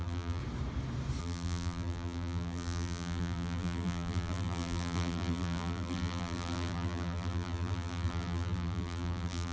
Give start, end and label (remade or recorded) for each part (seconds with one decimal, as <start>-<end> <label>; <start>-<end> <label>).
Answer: 0.0-0.4 remade; 0.4-1.2 recorded; 1.2-9.5 remade